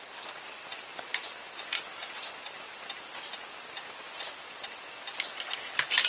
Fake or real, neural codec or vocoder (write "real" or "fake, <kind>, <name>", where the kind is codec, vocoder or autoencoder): real